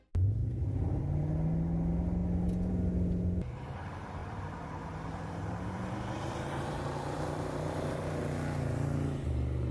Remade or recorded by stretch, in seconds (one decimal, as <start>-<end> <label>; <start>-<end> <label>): 0.0-0.4 recorded; 0.4-1.0 remade; 1.0-4.2 recorded; 4.2-8.2 remade; 8.2-9.7 recorded